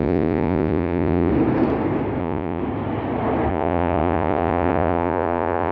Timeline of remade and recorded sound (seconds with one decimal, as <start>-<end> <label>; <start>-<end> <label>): 0.0-1.3 remade; 1.3-2.2 recorded; 2.2-2.6 remade; 2.6-3.5 recorded; 3.5-5.7 remade